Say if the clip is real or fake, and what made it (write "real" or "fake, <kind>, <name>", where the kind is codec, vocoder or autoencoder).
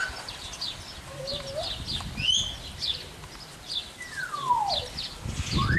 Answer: real